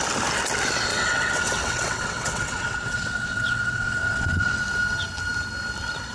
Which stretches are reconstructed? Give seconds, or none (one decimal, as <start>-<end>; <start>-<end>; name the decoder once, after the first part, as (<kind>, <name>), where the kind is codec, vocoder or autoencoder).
0.9-4.6 (vocoder, WaveNeXt)

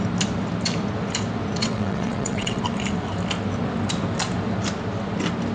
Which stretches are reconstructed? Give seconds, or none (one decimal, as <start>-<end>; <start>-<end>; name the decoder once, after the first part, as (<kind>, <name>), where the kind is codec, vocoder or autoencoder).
1.6-2.6 (vocoder, WaveNeXt)

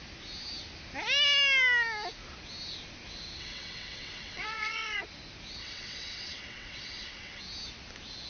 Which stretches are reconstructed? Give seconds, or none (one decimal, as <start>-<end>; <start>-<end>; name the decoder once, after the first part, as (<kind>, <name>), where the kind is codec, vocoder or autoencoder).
3.4-5.0 (vocoder, WaveNeXt); 5.6-7.4

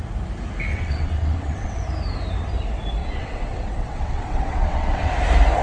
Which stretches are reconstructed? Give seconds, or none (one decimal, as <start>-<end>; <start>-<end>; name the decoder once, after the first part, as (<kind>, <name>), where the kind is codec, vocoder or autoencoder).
0.7-1.8 (vocoder, WaveNeXt); 3.0-5.1

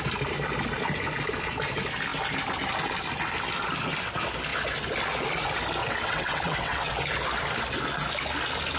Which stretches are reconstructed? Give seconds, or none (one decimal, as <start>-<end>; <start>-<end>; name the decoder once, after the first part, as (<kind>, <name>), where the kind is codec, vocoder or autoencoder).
5.8-6.9 (vocoder, WaveNeXt)